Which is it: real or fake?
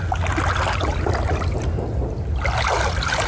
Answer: real